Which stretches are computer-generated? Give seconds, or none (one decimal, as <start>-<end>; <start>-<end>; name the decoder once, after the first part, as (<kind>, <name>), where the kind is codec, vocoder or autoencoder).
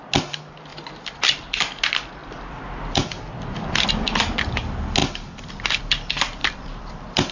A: 0.7-1.2 (vocoder, BigVGAN v2); 2.2-3.9; 5.0-5.8; 6.4-7.3